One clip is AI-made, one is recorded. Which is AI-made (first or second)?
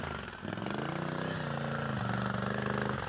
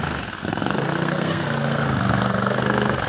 second